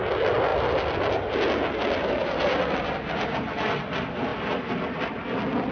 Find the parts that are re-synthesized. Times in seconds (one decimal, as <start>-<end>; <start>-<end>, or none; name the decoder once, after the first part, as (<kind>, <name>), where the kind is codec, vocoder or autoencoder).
none